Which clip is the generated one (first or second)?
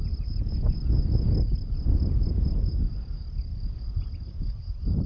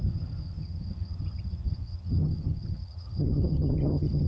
second